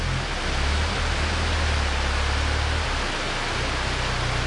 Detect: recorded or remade recorded